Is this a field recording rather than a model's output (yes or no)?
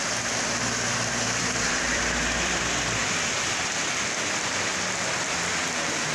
no